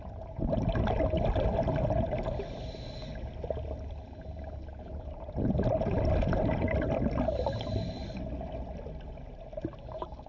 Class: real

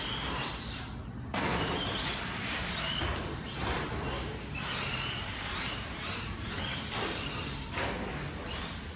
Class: real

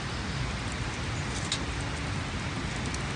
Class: real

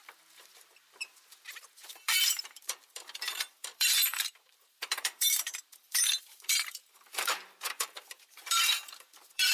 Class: fake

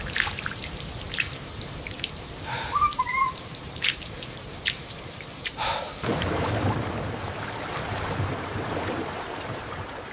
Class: fake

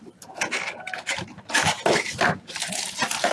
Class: real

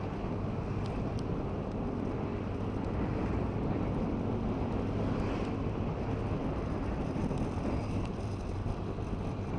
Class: real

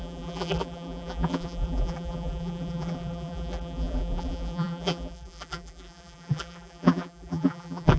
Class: fake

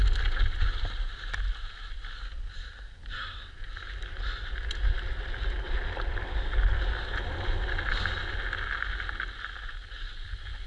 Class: real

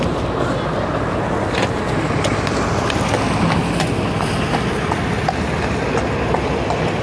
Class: real